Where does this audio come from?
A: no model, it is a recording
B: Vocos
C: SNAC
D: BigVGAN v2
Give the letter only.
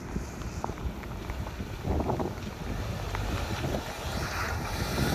A